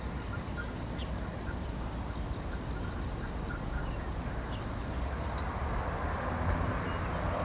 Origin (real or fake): real